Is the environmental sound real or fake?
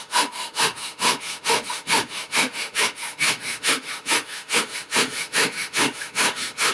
fake